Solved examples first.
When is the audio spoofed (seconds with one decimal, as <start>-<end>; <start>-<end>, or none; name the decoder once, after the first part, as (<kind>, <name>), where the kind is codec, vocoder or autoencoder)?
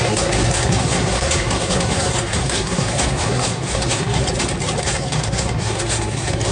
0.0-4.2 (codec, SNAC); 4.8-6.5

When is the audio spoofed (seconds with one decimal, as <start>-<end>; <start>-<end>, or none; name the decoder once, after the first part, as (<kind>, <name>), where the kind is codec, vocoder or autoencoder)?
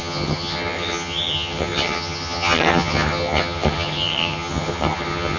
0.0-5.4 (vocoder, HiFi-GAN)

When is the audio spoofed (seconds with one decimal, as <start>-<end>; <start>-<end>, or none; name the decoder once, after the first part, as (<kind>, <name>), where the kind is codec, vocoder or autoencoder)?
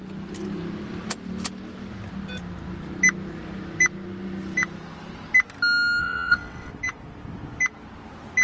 6.0-6.7 (vocoder, WaveNeXt)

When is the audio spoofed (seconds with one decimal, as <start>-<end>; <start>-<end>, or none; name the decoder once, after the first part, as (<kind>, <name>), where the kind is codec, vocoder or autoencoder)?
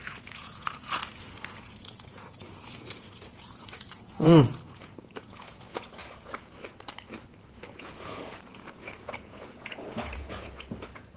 0.0-6.0 (vocoder, Vocos); 7.5-11.2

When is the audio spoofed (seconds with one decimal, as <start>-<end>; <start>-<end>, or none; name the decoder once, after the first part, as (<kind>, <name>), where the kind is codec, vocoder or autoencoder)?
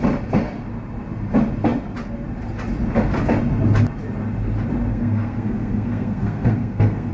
4.9-7.1 (codec, SNAC)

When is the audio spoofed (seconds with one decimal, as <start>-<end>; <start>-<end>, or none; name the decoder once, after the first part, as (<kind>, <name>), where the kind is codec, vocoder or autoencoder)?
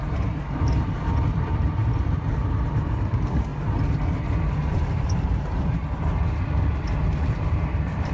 0.0-3.5 (vocoder, BigVGAN v2); 4.7-5.8; 6.7-8.1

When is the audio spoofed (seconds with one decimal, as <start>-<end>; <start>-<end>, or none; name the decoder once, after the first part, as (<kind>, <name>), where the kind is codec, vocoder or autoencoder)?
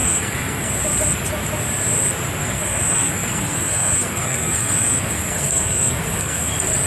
0.0-0.7 (codec, SNAC); 2.4-6.5